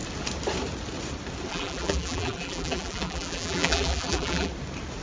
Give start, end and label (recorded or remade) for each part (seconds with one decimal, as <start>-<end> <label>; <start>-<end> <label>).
0.0-1.5 recorded; 1.5-4.5 remade; 4.5-5.0 recorded